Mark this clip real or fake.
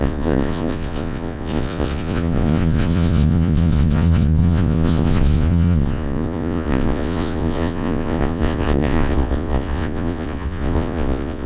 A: fake